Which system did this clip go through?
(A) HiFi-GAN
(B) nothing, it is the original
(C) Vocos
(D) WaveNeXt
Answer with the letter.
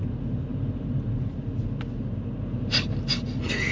B